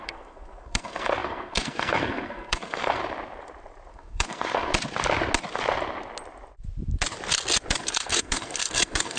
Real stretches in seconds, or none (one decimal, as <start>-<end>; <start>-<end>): 3.0-3.9; 4.7-7.8